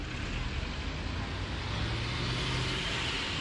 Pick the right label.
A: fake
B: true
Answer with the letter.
B